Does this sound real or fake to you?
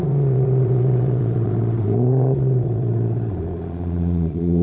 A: fake